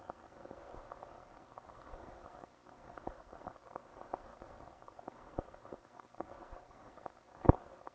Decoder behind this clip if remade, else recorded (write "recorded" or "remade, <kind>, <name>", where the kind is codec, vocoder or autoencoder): remade, codec, SNAC